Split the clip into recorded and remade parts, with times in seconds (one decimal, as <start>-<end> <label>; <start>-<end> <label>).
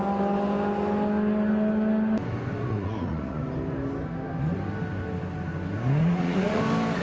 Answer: 0.0-2.6 recorded; 2.6-3.4 remade; 3.4-6.0 recorded; 6.0-6.6 remade; 6.6-7.0 recorded